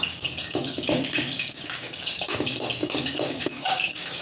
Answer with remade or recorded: remade